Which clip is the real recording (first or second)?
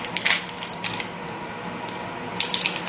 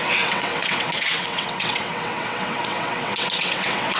first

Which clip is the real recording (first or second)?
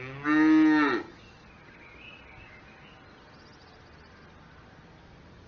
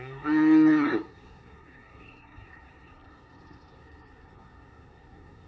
first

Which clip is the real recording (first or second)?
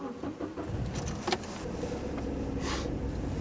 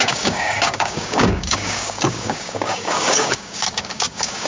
first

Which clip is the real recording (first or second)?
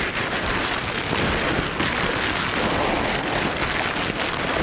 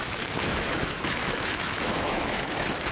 first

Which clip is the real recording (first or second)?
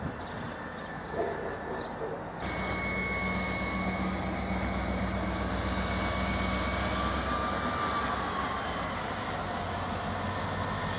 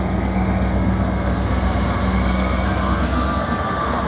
first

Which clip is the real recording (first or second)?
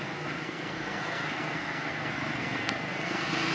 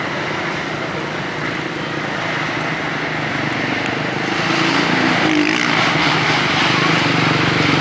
second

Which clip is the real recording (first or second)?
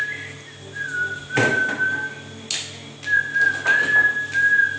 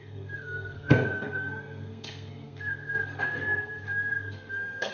first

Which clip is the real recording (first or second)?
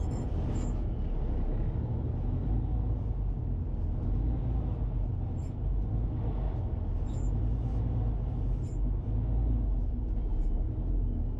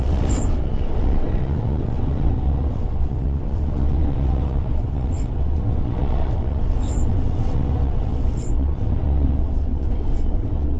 first